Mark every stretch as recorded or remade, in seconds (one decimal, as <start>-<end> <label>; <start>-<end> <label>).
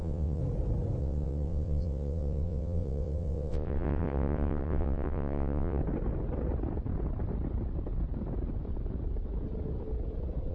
0.0-0.4 remade; 0.4-1.0 recorded; 1.0-5.8 remade; 5.8-10.5 recorded